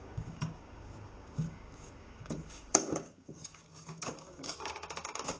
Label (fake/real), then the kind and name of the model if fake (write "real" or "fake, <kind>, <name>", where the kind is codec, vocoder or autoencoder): fake, codec, DAC